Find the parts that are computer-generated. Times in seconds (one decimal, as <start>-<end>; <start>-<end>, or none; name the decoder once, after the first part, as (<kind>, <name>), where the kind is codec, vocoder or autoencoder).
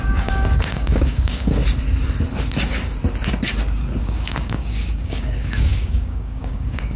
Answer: 0.0-1.6 (codec, DAC); 4.0-7.0